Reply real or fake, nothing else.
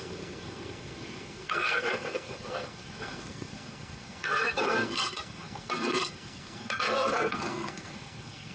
fake